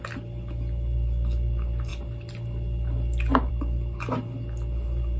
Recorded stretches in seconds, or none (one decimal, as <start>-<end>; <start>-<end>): 0.0-5.2